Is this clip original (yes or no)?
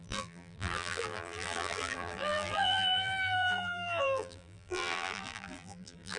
no